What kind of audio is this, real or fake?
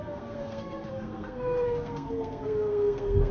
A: fake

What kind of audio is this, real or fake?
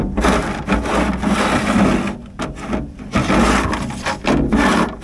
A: real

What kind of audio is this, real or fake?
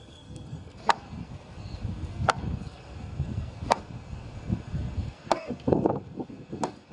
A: fake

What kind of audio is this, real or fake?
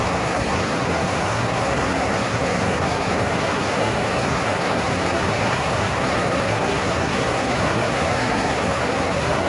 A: fake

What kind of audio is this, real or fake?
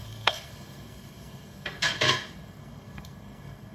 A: fake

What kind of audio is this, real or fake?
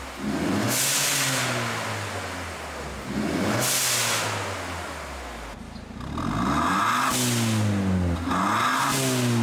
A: real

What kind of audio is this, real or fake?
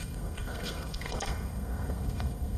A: fake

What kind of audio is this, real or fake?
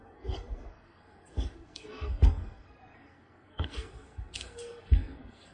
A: fake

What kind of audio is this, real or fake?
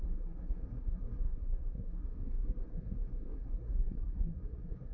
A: fake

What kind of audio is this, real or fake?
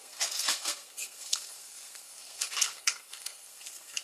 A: fake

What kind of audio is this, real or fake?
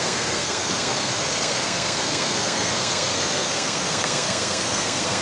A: fake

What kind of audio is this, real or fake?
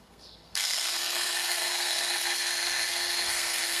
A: fake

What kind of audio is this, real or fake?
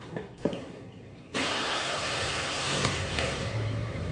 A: fake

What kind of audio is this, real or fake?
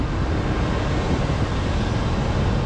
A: real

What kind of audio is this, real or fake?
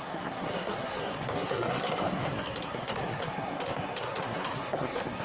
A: fake